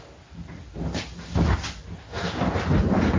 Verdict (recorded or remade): recorded